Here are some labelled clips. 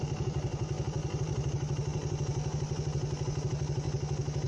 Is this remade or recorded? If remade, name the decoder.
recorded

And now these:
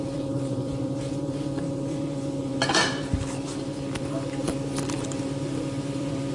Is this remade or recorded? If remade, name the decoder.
remade, vocoder, BigVGAN v2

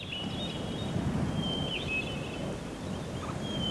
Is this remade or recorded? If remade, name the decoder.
recorded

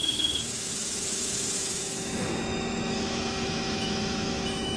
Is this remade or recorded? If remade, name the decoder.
remade, autoencoder, DAC-VAE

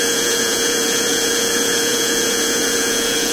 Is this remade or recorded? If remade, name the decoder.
remade, vocoder, Vocos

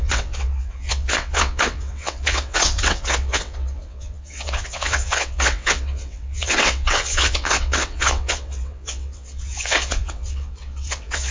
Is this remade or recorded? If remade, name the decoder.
remade, vocoder, WaveNeXt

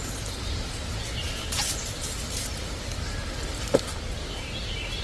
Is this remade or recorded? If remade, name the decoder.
recorded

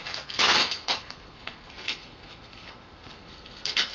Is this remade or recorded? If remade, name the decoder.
remade, codec, SNAC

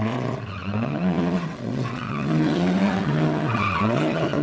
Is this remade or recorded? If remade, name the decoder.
remade, vocoder, WaveNeXt